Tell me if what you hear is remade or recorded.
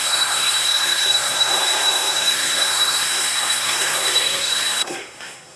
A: remade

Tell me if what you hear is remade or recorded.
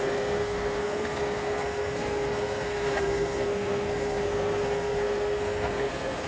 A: remade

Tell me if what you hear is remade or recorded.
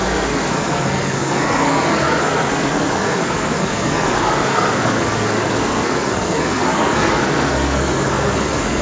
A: remade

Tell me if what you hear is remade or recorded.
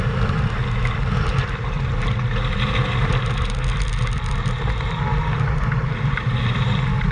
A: recorded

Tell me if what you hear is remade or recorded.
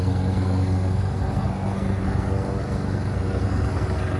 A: remade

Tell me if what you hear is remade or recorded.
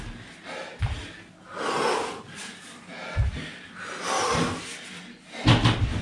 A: recorded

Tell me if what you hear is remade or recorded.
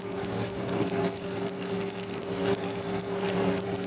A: remade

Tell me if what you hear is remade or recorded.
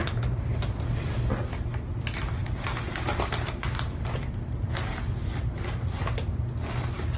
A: recorded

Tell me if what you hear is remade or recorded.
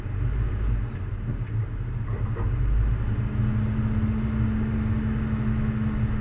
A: recorded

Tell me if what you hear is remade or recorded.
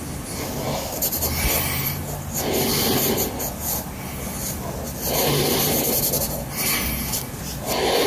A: recorded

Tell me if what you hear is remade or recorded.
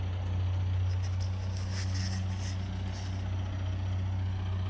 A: recorded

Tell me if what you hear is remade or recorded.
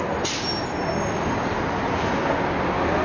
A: recorded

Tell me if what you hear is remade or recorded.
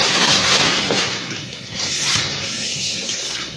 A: remade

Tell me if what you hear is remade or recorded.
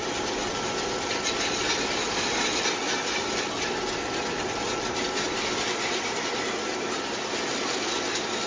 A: recorded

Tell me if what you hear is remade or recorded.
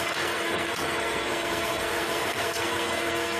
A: remade